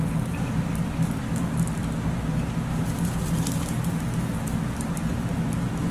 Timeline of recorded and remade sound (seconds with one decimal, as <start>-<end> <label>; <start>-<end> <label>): 0.0-5.9 recorded